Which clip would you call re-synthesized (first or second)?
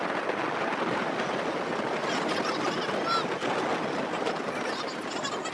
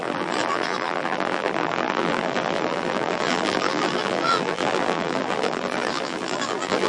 second